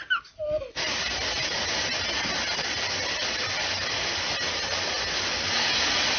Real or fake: real